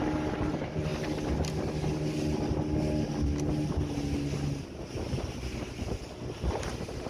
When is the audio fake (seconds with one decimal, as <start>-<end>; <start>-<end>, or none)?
none